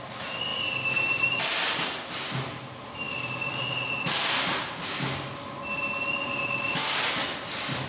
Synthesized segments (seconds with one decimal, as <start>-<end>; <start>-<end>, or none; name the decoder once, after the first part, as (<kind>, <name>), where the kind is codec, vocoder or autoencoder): none